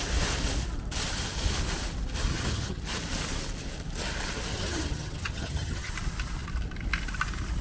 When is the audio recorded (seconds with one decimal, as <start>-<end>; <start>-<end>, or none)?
0.0-2.3; 2.8-4.5; 5.9-7.6

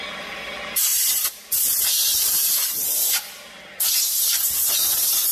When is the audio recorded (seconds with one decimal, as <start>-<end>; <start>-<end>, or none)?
0.0-0.9; 1.5-2.1; 2.8-5.3

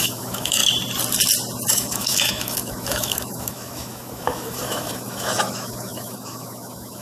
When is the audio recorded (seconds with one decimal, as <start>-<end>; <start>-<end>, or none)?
0.6-1.7

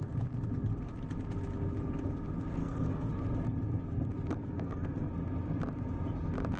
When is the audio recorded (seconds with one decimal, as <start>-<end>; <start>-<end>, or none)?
0.0-2.6; 3.1-4.4; 5.1-6.6

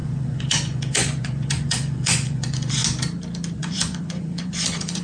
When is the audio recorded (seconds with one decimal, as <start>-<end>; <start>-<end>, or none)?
2.8-3.6